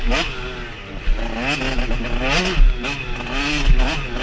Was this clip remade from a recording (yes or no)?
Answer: no